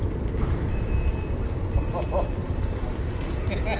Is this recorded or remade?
recorded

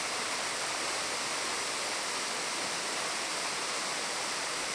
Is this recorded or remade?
recorded